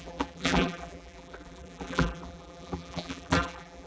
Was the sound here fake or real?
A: fake